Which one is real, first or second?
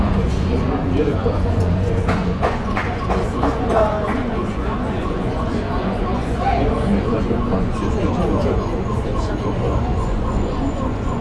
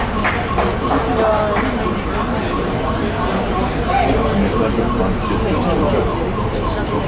second